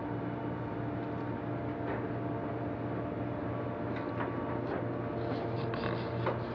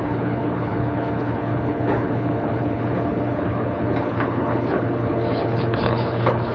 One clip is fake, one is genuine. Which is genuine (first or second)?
first